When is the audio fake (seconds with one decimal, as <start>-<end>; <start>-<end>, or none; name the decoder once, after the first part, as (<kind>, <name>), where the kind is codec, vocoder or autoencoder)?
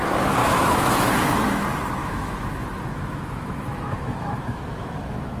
0.4-1.1 (autoencoder, DAC-VAE); 2.0-5.4